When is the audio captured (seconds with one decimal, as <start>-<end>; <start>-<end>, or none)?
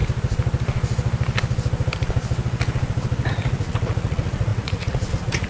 0.0-3.3